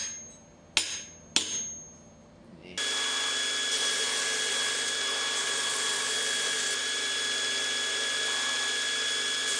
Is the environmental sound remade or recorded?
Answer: recorded